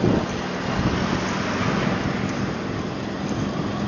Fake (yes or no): no